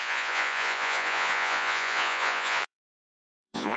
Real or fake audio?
fake